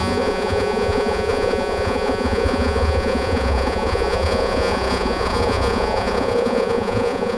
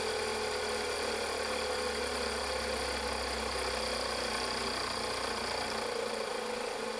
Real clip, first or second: second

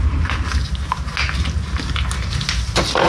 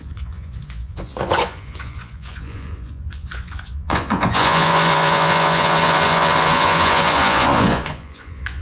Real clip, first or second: first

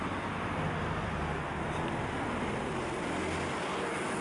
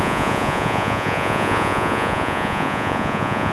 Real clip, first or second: first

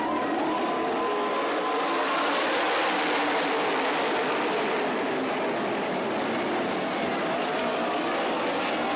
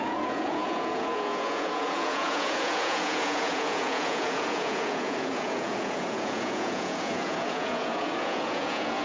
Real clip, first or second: first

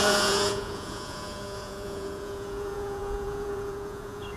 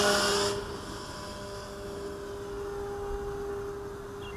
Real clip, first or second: second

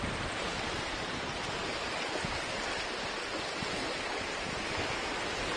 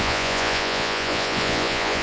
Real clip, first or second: first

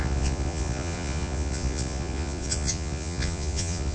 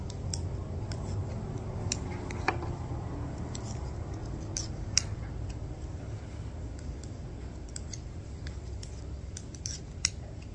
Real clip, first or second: second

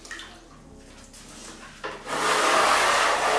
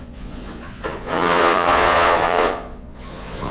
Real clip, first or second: first